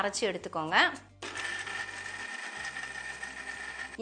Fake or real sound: real